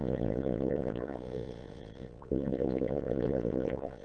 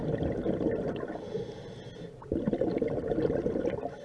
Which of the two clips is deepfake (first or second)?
first